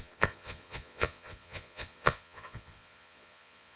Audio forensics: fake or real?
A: fake